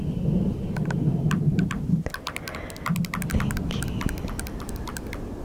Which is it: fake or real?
real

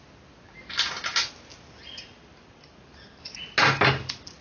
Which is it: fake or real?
real